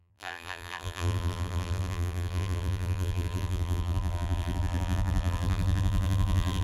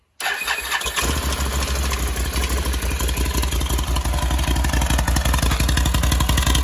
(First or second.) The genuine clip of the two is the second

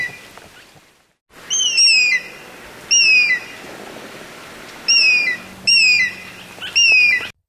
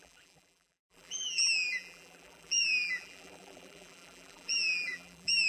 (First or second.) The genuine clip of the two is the first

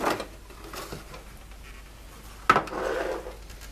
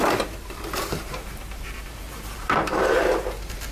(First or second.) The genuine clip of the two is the first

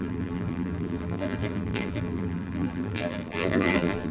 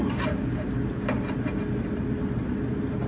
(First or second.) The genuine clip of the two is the second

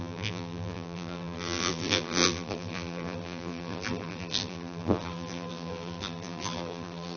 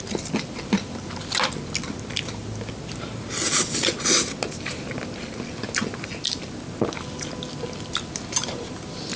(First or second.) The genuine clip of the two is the second